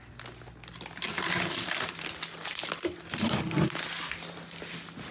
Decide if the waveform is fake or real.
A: real